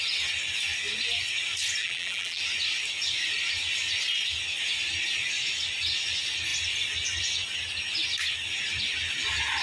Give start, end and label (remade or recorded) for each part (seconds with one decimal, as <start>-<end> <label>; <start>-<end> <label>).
0.0-1.8 recorded; 1.8-2.4 remade; 2.4-9.6 recorded

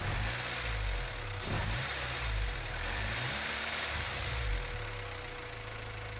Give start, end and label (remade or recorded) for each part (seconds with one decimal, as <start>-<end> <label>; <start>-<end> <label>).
0.0-1.6 recorded; 1.6-4.5 remade; 4.5-6.2 recorded

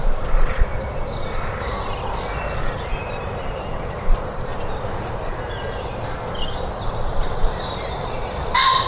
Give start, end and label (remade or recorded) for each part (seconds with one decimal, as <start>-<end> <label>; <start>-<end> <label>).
0.0-0.7 remade; 0.7-2.6 recorded; 2.6-4.5 remade; 4.5-5.1 recorded; 5.1-5.9 remade; 5.9-6.9 recorded; 6.9-8.9 remade

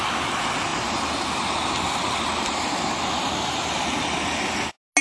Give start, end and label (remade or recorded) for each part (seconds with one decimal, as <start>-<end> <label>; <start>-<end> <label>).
0.0-0.7 recorded; 0.7-1.5 remade; 1.5-5.0 recorded